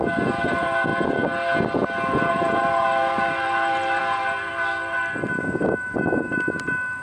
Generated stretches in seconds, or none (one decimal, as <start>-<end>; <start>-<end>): 0.0-0.9; 2.3-4.0; 5.4-7.0